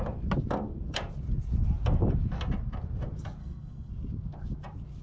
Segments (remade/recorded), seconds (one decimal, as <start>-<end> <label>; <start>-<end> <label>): 0.0-3.4 recorded; 3.4-3.9 remade; 3.9-5.0 recorded